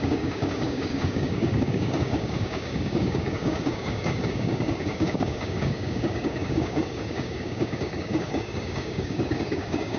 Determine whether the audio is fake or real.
fake